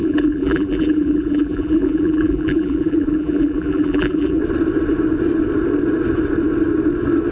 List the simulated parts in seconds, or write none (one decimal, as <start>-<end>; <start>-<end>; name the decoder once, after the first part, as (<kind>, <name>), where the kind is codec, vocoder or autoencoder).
0.0-4.4 (vocoder, BigVGAN v2)